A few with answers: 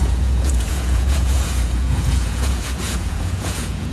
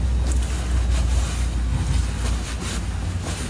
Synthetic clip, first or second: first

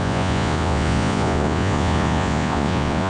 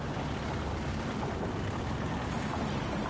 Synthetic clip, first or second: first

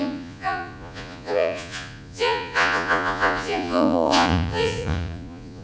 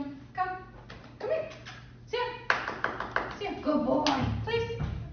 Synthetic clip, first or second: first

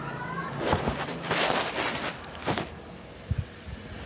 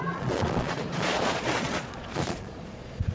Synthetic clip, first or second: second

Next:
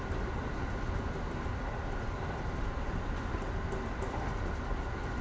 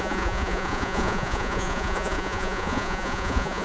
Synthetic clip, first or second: second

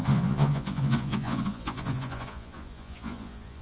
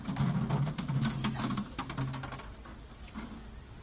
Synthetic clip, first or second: first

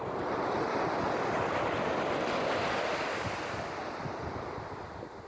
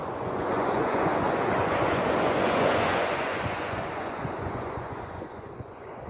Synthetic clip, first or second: second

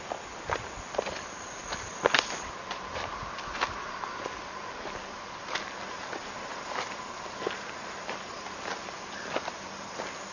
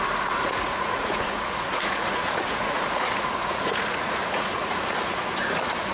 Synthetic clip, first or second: second